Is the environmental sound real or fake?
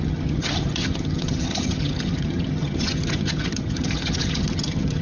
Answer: fake